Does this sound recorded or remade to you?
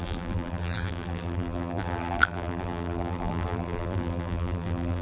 remade